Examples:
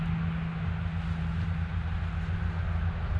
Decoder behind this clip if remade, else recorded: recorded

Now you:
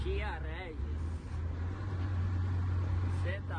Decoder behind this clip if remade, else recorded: recorded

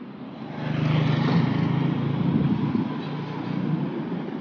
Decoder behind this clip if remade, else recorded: recorded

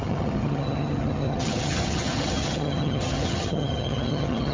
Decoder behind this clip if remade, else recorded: remade, vocoder, HiFi-GAN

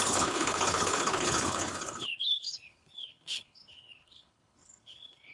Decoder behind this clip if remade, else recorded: remade, codec, HILCodec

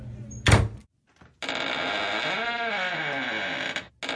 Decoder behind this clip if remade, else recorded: recorded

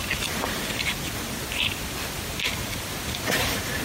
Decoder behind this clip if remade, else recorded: recorded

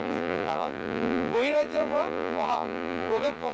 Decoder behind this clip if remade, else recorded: remade, vocoder, Vocos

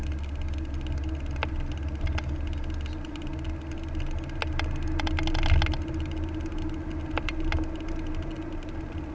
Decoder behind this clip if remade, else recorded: recorded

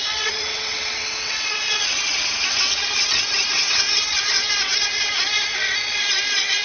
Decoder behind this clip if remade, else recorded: remade, vocoder, WaveNeXt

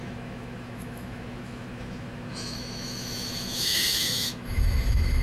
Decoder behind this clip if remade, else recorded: remade, autoencoder, DAC-VAE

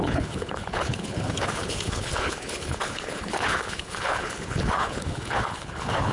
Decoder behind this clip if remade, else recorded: remade, codec, HILCodec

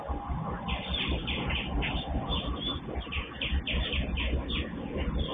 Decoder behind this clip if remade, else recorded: recorded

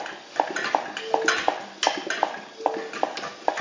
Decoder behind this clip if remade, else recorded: recorded